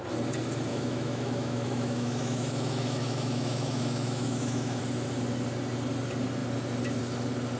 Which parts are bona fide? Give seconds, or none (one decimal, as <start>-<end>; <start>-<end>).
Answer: 0.0-0.7; 4.8-7.6